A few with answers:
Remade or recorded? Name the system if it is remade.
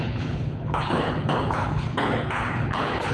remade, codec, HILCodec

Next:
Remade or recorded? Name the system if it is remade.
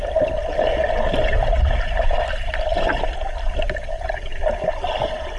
recorded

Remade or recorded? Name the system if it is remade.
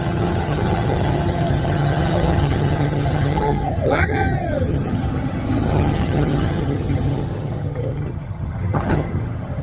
remade, vocoder, HiFi-GAN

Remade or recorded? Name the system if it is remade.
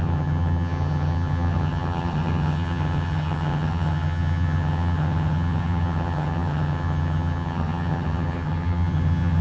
remade, vocoder, HiFi-GAN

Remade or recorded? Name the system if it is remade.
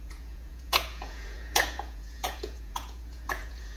remade, vocoder, Vocos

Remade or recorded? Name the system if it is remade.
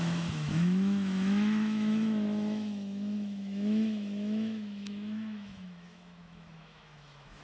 remade, autoencoder, DAC-VAE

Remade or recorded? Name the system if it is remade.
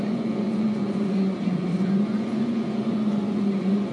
remade, vocoder, Vocos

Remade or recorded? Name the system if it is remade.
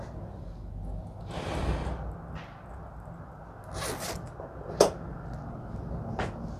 recorded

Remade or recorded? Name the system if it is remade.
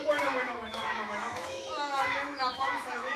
remade, autoencoder, DAC-VAE